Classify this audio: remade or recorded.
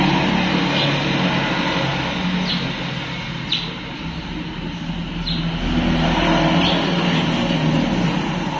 recorded